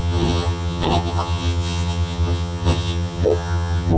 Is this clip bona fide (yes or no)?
no